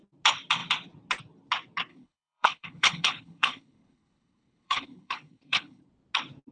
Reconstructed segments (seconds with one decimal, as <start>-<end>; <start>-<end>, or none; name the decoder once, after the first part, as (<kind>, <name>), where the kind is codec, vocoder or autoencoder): 1.9-5.8 (codec, HILCodec)